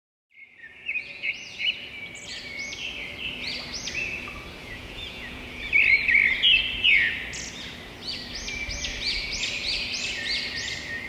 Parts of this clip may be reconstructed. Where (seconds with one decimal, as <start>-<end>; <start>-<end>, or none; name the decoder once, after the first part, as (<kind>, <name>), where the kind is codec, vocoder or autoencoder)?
0.6-1.3 (vocoder, Vocos); 4.6-5.7